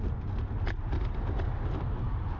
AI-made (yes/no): no